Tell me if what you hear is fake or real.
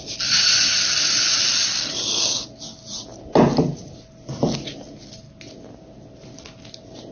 real